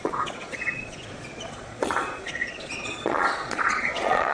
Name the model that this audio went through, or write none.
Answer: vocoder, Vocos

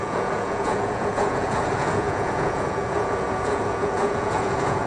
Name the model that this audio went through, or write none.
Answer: vocoder, Vocos